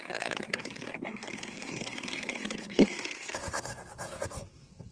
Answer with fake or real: fake